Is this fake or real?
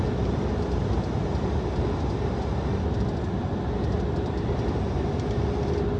real